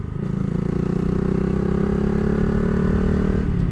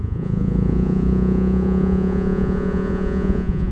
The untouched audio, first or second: first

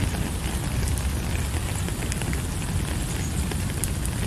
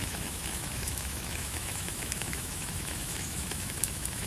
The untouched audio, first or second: first